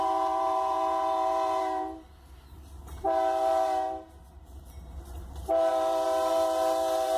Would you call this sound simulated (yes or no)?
yes